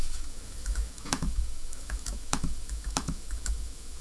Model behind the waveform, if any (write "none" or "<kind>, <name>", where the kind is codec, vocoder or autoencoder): autoencoder, DAC-VAE